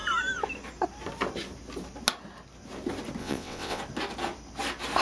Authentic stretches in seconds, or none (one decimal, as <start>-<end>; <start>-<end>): 0.0-3.2; 3.8-5.0